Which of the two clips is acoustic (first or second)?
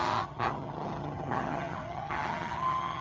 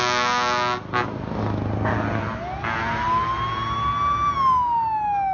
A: second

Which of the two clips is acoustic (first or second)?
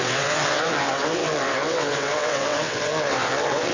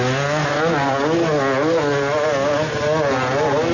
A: second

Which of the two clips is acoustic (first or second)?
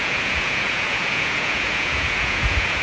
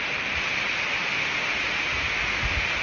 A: second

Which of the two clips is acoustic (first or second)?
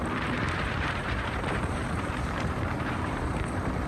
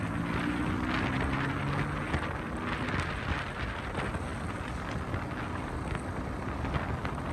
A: second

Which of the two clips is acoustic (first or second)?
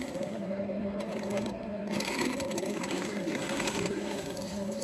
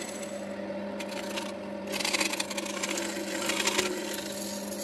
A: second